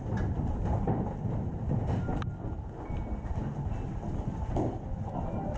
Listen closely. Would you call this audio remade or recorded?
recorded